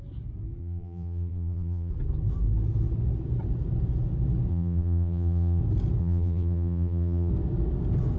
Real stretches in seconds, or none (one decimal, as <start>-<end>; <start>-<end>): 0.0-0.6; 1.9-4.5; 5.6-6.0; 7.3-8.2